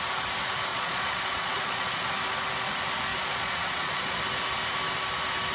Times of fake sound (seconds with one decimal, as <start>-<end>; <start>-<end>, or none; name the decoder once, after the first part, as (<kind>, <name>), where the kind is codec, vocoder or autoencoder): 0.7-2.1 (vocoder, Vocos); 3.1-4.2